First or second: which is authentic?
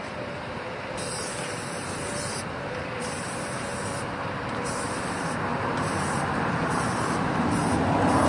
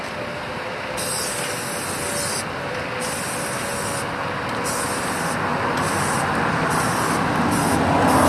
second